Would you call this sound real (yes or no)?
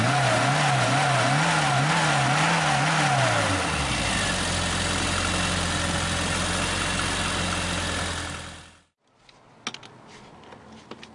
yes